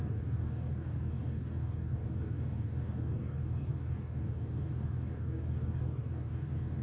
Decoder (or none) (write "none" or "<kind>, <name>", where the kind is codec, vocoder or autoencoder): codec, DAC